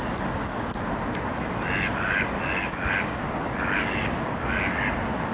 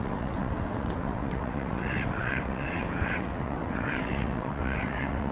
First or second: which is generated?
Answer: second